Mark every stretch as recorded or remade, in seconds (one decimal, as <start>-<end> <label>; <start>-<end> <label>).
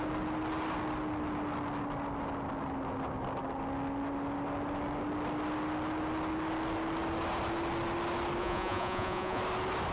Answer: 0.0-8.4 recorded; 8.4-9.4 remade; 9.4-9.9 recorded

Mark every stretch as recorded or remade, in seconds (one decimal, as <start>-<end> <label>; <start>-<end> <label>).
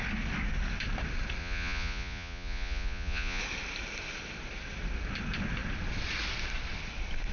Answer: 0.0-1.4 recorded; 1.4-3.4 remade; 3.4-7.3 recorded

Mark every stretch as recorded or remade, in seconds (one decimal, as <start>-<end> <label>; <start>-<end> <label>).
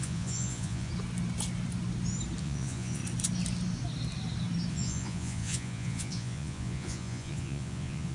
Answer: 0.0-0.9 remade; 0.9-2.4 recorded; 2.4-3.0 remade; 3.0-4.7 recorded; 4.7-8.1 remade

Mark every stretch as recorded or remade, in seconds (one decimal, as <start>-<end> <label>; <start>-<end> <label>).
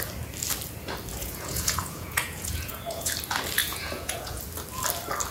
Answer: 0.0-1.2 recorded; 1.2-3.1 remade; 3.1-3.6 recorded; 3.6-4.4 remade; 4.4-5.3 recorded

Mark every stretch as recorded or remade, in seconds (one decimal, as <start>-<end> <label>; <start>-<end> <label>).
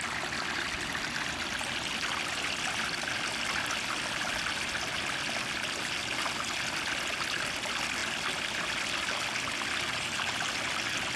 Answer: 0.0-11.2 recorded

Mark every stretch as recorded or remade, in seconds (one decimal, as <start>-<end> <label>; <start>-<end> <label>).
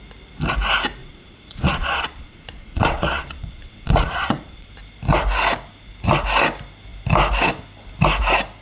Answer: 0.0-1.0 recorded; 1.0-4.7 remade; 4.7-8.6 recorded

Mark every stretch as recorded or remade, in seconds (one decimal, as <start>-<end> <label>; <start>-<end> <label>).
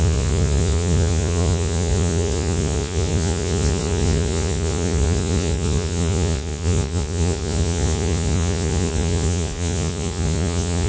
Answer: 0.0-10.9 remade